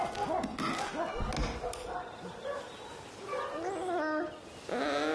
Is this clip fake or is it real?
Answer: real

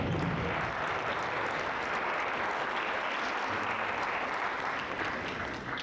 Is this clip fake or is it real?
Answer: real